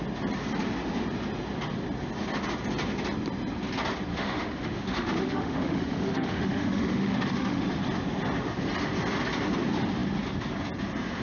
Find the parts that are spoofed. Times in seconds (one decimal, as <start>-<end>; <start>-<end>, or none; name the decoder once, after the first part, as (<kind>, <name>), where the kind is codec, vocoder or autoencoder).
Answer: 4.1-7.6 (autoencoder, DAC-VAE)